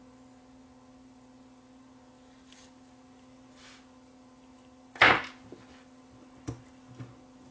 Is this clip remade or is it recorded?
recorded